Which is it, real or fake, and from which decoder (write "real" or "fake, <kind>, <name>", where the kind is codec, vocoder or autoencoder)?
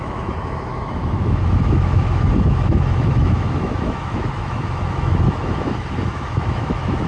fake, autoencoder, DAC-VAE